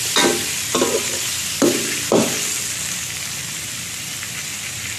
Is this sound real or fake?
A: real